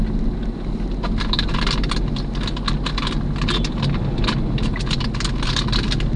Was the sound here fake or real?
real